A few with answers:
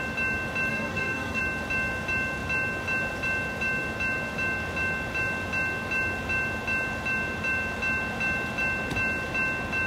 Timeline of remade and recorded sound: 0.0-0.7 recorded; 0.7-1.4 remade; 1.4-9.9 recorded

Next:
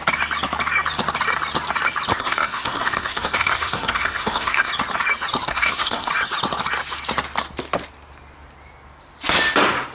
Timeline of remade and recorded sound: 0.0-2.1 recorded; 2.1-4.7 remade; 4.7-5.5 recorded; 5.5-6.1 remade; 6.1-9.9 recorded

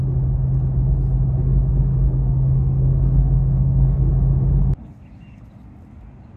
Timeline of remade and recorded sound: 0.0-1.7 recorded; 1.7-4.1 remade; 4.1-6.4 recorded

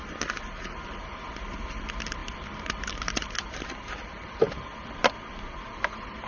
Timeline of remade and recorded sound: 0.0-6.3 recorded